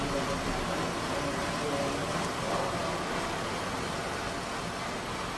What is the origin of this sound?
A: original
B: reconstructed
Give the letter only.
A